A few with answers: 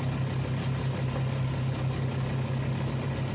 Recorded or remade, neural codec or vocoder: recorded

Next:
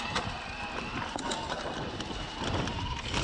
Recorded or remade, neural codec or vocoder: recorded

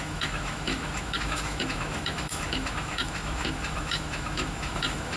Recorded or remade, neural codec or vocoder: remade, autoencoder, DAC-VAE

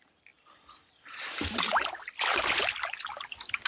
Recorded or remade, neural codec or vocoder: recorded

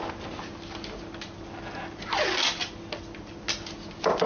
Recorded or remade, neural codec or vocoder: recorded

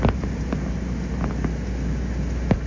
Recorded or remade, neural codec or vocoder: recorded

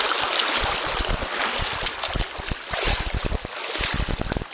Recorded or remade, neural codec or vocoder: recorded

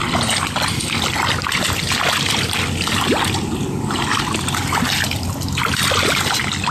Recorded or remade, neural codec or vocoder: recorded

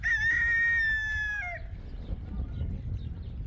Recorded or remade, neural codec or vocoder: recorded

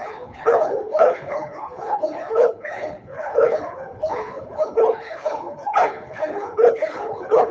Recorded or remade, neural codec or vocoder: remade, codec, HILCodec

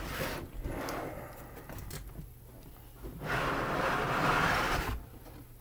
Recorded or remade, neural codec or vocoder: recorded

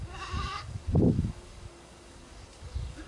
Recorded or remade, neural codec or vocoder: remade, codec, DAC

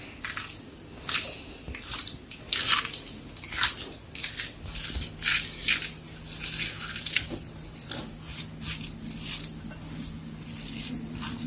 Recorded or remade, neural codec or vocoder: recorded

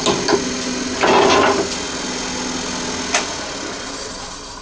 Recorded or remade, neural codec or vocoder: recorded